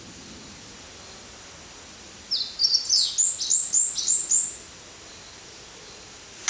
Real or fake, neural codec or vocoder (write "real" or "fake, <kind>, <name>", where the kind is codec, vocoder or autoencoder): real